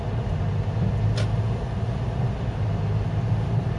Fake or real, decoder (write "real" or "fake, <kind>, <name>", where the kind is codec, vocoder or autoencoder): real